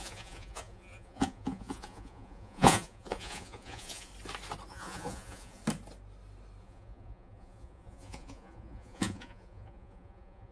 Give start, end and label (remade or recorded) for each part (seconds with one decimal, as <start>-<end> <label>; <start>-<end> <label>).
0.0-4.1 remade; 4.1-4.7 recorded; 4.7-5.6 remade; 5.6-6.6 recorded; 6.6-10.5 remade